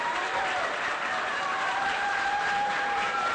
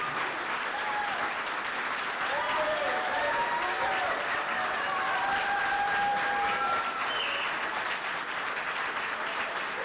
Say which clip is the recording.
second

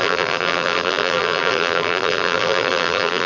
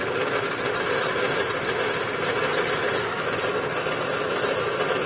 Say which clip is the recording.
second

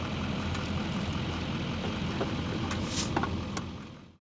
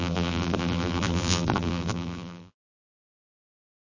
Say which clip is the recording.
first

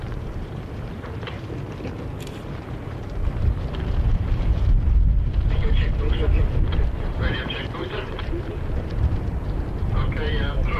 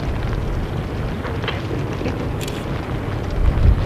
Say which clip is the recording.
second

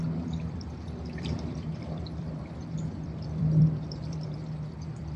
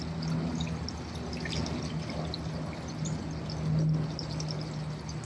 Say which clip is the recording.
second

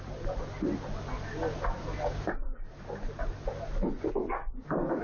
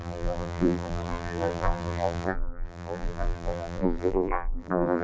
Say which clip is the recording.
first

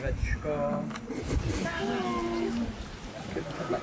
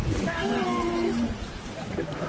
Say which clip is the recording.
first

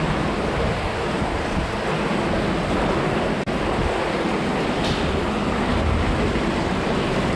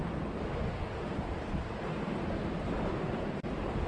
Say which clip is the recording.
first